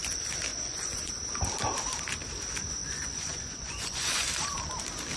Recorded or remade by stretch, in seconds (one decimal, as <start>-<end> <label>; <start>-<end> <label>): 0.0-0.5 recorded; 0.5-1.1 remade; 1.1-2.8 recorded; 2.8-4.3 remade; 4.3-5.2 recorded